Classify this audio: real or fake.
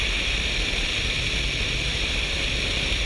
fake